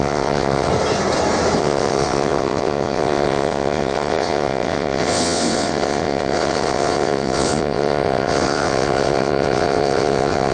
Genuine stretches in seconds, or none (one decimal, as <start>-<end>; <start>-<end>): 0.7-1.6